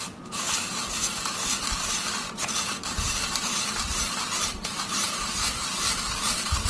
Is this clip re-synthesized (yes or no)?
yes